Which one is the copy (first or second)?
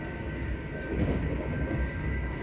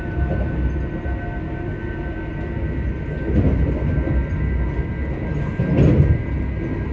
first